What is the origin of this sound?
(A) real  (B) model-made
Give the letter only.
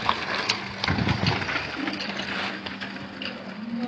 A